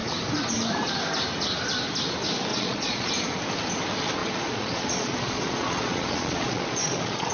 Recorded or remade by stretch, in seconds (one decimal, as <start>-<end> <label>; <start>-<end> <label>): 0.0-2.5 recorded; 2.5-3.1 remade; 3.1-4.2 recorded; 4.2-7.3 remade